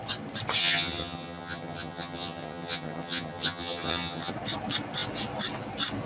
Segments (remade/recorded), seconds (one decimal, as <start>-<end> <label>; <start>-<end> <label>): 0.0-0.6 recorded; 0.6-4.3 remade; 4.3-6.1 recorded